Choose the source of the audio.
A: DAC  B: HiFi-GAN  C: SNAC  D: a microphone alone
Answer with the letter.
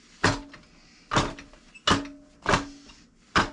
D